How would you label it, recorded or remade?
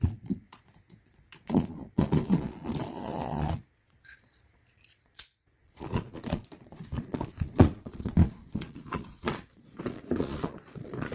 remade